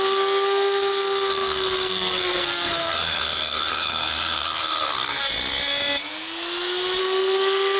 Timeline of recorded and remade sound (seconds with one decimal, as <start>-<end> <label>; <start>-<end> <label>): 0.0-5.2 remade; 5.2-7.0 recorded; 7.0-7.8 remade

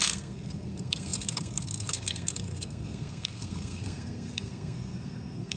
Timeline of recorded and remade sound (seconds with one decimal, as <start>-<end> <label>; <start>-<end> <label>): 0.0-5.6 remade

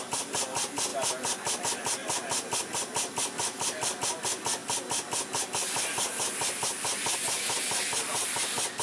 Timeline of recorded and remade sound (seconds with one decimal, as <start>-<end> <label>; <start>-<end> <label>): 0.0-8.8 recorded

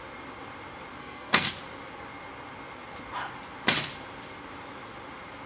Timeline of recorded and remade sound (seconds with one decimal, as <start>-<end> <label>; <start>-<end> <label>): 0.0-1.0 recorded; 1.0-1.5 remade; 1.5-5.5 recorded